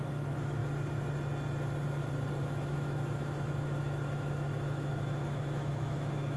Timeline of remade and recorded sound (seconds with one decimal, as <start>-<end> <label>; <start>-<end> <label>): 0.0-0.6 remade; 0.6-2.4 recorded; 2.4-6.4 remade